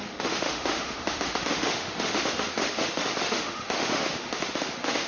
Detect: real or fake fake